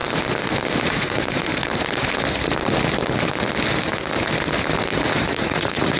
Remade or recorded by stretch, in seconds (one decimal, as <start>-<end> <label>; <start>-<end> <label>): 0.0-0.8 recorded; 0.8-1.5 remade; 1.5-5.1 recorded; 5.1-6.0 remade